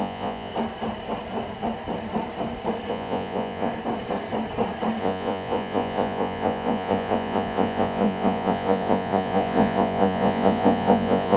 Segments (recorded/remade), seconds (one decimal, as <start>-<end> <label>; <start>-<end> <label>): 0.0-0.5 remade; 0.5-2.9 recorded; 2.9-3.7 remade; 3.7-5.0 recorded; 5.0-11.4 remade